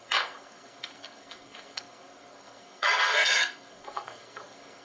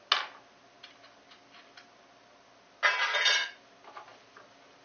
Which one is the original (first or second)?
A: second